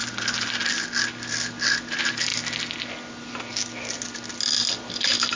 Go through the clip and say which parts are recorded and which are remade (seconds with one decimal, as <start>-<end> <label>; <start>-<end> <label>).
0.0-5.4 recorded